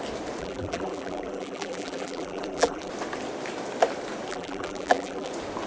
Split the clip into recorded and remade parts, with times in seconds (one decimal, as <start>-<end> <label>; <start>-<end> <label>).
0.0-0.4 recorded; 0.4-2.9 remade; 2.9-4.3 recorded; 4.3-5.3 remade; 5.3-5.7 recorded